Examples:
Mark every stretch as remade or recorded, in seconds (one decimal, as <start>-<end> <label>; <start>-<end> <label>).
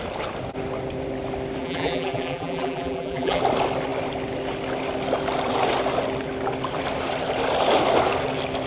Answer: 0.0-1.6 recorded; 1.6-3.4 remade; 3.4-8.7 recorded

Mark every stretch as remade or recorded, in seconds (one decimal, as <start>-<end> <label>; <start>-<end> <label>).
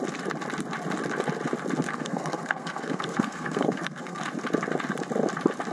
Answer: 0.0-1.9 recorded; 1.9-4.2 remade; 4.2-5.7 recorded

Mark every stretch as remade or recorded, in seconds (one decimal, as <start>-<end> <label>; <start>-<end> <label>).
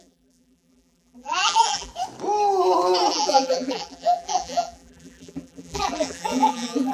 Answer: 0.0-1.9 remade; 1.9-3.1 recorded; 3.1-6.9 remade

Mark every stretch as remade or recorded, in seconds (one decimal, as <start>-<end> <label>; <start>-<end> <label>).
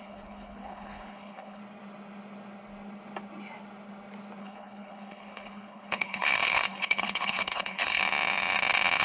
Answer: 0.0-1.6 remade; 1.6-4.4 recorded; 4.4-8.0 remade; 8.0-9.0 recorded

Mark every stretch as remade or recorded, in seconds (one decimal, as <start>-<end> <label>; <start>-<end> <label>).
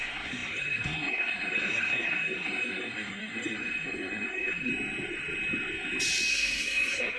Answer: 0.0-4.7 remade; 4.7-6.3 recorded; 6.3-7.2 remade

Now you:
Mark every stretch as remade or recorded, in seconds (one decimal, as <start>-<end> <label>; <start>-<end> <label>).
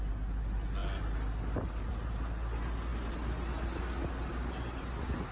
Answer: 0.0-5.3 recorded